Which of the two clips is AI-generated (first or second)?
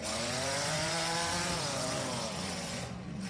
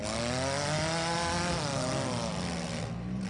first